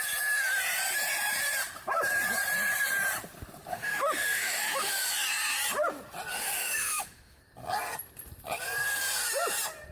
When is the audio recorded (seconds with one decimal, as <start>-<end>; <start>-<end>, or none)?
0.0-3.7; 5.1-6.3; 7.4-9.9